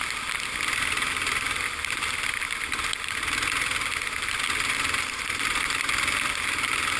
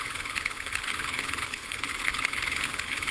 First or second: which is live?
first